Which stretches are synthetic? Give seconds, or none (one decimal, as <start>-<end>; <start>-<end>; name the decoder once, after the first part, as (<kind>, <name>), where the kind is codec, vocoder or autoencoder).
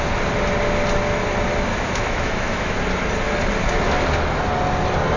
1.7-2.7 (autoencoder, DAC-VAE)